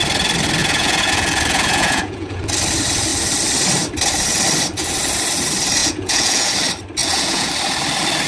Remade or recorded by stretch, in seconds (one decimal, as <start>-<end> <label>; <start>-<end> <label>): 0.0-0.6 recorded; 0.6-2.4 remade; 2.4-5.8 recorded; 5.8-6.5 remade; 6.5-7.0 recorded; 7.0-7.5 remade; 7.5-8.3 recorded